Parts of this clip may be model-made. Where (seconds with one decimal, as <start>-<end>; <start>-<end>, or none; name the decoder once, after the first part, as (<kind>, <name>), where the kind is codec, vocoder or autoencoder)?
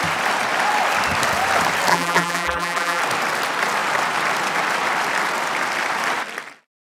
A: 1.9-3.0 (vocoder, BigVGAN v2)